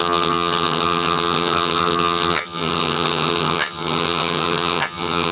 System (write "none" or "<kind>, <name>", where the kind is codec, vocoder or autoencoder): vocoder, HiFi-GAN